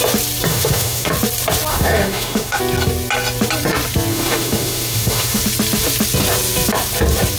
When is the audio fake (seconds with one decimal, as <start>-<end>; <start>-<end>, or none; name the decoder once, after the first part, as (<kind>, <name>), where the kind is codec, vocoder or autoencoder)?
0.5-1.1 (autoencoder, DAC-VAE); 1.7-2.6; 4.1-5.4